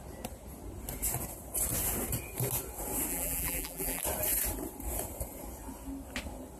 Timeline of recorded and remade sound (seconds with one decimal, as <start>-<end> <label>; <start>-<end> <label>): 0.0-3.1 recorded; 3.1-4.0 remade; 4.0-6.6 recorded